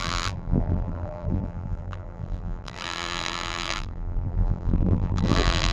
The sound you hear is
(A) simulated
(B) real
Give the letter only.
A